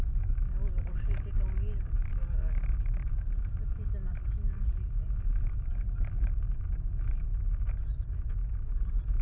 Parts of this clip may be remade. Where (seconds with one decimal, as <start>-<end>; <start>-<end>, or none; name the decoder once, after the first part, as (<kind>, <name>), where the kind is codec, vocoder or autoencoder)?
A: none

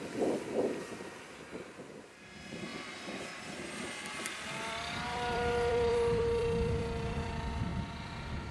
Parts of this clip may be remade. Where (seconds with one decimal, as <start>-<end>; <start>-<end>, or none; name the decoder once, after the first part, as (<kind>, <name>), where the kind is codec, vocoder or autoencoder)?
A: 0.0-7.7 (vocoder, BigVGAN v2)

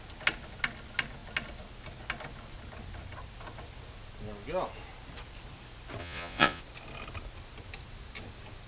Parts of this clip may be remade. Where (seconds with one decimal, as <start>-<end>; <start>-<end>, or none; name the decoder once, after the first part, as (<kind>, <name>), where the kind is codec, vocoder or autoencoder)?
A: 6.0-6.6 (vocoder, Vocos)

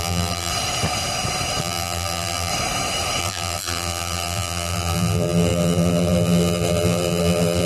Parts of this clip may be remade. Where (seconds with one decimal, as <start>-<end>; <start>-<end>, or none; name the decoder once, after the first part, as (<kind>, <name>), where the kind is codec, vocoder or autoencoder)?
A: 0.0-0.5 (vocoder, BigVGAN v2); 1.6-2.5; 3.2-7.7

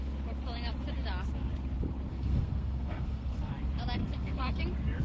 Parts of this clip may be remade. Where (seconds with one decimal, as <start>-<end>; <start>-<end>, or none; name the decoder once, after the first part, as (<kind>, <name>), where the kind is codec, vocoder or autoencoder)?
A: 2.1-3.5 (codec, SNAC); 4.0-4.6